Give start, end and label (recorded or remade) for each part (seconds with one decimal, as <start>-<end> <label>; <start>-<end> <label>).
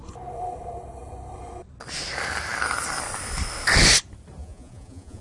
0.0-4.4 recorded; 4.4-5.2 remade